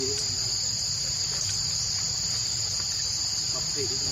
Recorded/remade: recorded